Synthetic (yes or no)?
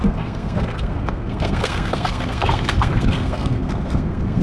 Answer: yes